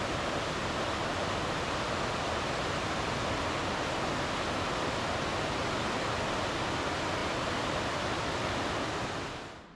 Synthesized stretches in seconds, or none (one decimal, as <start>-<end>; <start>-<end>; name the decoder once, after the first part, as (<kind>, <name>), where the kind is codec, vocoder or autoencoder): none